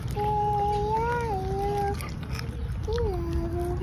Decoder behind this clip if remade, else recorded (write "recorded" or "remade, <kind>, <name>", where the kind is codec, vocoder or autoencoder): recorded